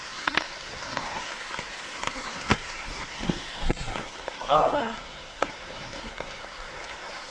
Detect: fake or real fake